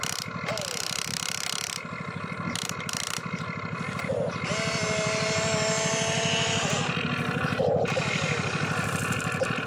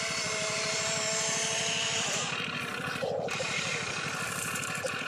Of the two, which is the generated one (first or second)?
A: second